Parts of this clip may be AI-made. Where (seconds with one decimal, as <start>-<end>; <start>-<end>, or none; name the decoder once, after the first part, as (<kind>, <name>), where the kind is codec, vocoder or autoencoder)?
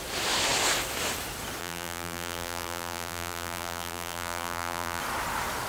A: 1.6-5.0 (vocoder, BigVGAN v2)